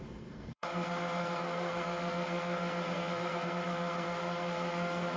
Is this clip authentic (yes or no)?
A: no